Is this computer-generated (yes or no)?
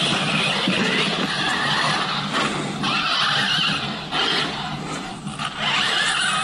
no